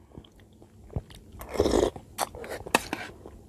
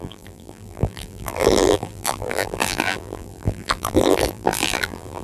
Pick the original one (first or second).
first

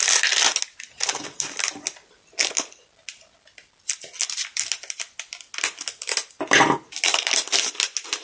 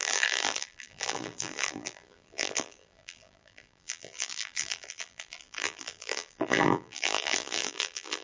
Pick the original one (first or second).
first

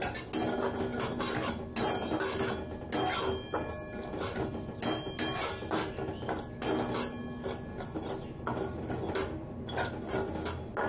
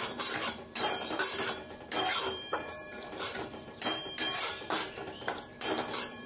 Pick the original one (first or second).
first